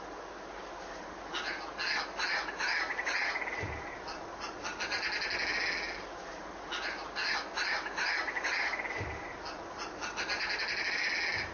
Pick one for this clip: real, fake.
real